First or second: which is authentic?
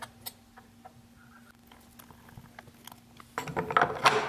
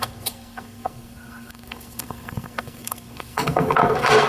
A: first